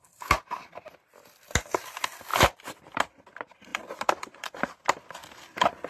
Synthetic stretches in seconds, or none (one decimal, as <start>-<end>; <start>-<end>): 2.3-3.0; 3.7-4.6

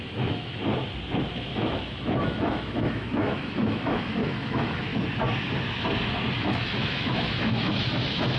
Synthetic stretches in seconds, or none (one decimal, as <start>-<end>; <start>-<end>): 0.0-0.6; 1.3-4.9; 6.4-8.4

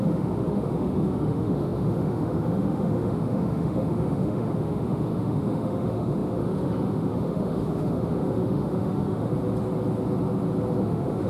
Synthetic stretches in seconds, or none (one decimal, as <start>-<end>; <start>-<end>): 0.0-9.3; 10.8-11.3

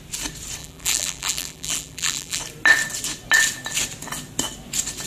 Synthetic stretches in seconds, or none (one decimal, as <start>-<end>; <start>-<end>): 0.6-2.4

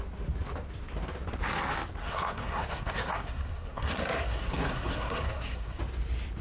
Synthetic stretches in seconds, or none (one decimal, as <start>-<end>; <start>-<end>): 2.0-5.8

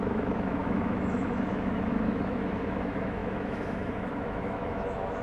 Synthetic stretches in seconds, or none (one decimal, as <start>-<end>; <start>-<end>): 0.0-5.2

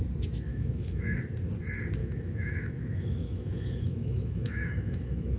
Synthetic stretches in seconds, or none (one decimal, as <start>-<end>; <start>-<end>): 0.5-1.2; 2.0-5.4

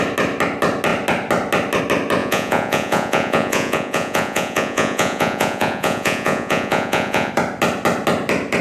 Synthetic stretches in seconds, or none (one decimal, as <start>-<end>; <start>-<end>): 2.2-7.3